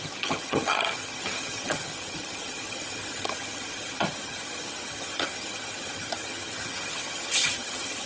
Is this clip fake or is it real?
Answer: fake